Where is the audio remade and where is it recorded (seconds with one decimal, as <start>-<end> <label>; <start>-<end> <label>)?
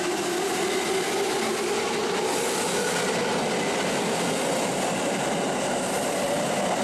0.0-6.8 recorded